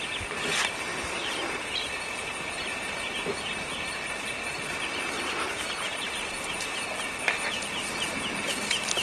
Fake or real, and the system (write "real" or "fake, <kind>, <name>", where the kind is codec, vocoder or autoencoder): real